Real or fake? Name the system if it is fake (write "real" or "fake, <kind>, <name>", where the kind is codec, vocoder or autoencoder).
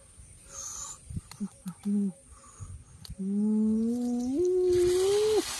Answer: real